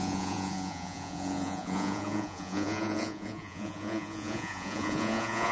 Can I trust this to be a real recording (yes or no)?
no